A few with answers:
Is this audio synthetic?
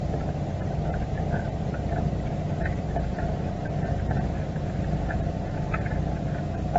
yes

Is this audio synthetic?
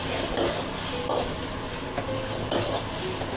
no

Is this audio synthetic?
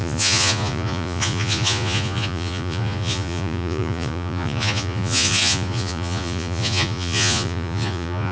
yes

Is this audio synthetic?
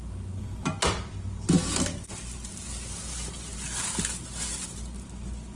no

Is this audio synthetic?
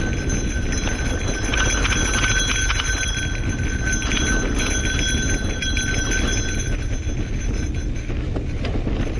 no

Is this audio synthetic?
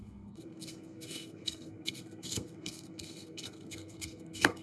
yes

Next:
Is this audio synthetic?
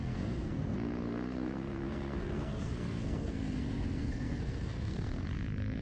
yes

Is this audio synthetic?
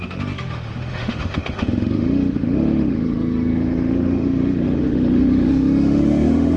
yes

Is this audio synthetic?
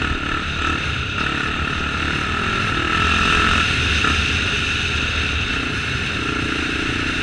no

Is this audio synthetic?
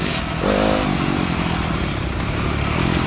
no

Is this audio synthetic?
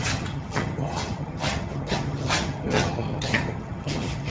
yes